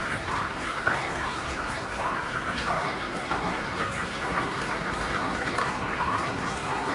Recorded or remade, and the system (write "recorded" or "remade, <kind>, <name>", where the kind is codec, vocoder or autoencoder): remade, codec, SNAC